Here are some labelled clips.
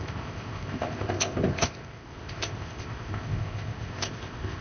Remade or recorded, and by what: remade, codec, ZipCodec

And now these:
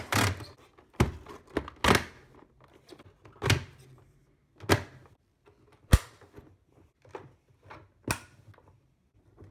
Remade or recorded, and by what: recorded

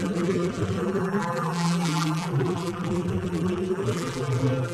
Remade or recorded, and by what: remade, vocoder, BigVGAN v2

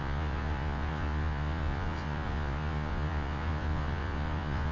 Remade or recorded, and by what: remade, vocoder, Vocos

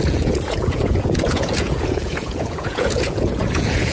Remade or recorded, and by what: remade, vocoder, Vocos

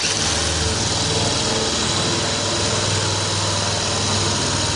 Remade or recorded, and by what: recorded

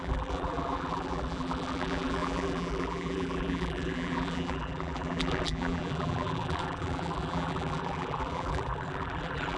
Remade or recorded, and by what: remade, vocoder, BigVGAN v2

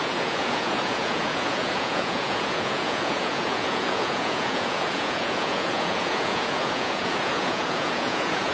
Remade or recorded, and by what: remade, vocoder, Vocos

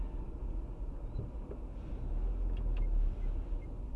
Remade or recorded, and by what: recorded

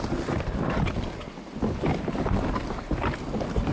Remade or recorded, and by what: recorded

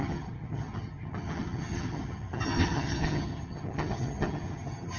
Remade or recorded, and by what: remade, vocoder, HiFi-GAN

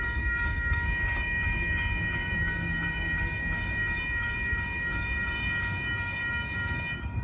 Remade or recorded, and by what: remade, codec, DAC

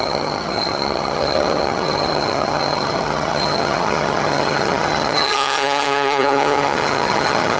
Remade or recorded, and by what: remade, vocoder, HiFi-GAN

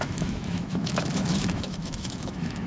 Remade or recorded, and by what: remade, autoencoder, DAC-VAE